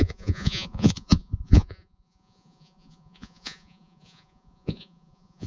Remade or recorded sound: remade